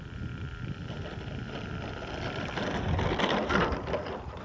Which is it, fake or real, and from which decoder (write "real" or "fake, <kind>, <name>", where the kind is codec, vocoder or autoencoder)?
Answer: real